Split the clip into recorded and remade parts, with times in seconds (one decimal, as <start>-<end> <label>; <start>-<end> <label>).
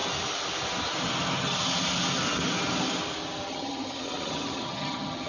0.0-3.5 recorded; 3.5-5.3 remade